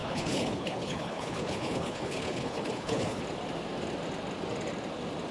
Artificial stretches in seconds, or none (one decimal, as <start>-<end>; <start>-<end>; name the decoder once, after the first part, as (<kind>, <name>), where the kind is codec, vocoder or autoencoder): 0.0-3.2 (codec, HILCodec)